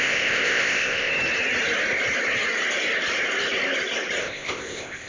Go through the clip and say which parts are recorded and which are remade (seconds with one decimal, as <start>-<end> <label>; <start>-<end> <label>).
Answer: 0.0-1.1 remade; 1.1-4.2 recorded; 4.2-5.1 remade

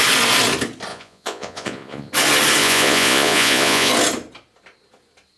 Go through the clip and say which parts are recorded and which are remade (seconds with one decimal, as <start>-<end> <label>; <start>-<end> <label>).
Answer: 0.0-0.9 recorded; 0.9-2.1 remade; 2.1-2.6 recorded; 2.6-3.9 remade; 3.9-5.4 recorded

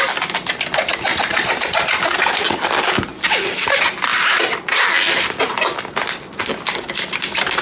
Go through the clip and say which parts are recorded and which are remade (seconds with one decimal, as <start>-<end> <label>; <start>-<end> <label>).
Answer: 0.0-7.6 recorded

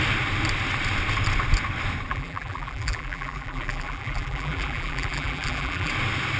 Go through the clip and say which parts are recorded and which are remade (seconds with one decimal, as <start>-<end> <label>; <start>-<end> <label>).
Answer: 0.0-2.1 recorded; 2.1-5.9 remade; 5.9-6.4 recorded